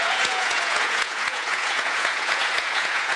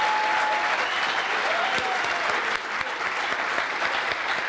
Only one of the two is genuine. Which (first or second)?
second